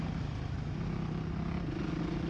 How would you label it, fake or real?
real